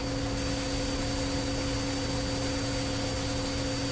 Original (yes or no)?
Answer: yes